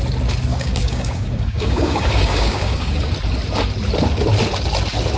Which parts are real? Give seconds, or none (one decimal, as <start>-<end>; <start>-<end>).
0.0-0.5; 3.1-5.2